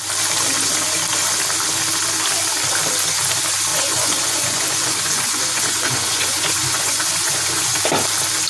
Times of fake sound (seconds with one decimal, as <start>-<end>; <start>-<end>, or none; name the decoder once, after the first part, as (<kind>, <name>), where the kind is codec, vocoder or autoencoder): 3.7-7.8 (vocoder, Vocos)